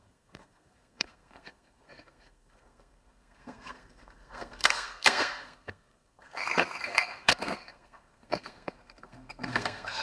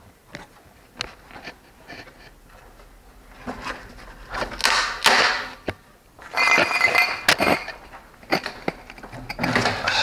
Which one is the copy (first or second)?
first